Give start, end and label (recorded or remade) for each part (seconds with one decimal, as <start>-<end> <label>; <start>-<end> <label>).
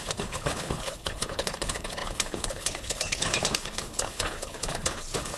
0.0-5.4 remade